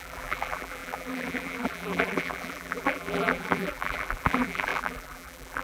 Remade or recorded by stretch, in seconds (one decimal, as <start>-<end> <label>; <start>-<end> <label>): 0.0-5.6 remade